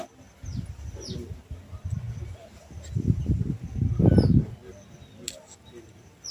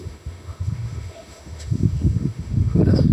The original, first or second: first